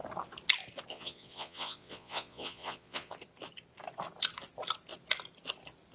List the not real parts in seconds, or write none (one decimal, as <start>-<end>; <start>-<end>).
0.9-3.1